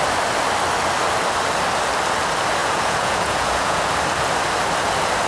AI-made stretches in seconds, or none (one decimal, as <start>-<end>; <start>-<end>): 2.6-3.8